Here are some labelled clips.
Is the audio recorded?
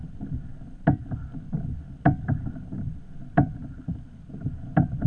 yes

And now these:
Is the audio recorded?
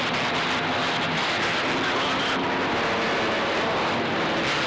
yes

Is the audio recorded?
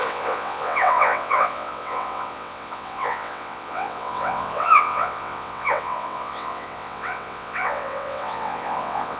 no